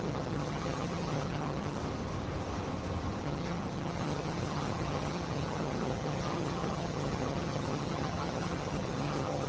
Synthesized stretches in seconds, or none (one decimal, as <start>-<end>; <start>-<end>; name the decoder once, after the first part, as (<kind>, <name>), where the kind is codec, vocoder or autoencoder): 0.0-1.8 (vocoder, HiFi-GAN); 3.2-9.5